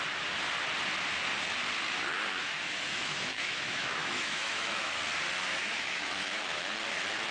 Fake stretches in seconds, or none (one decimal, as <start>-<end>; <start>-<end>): 2.4-5.0; 5.5-6.7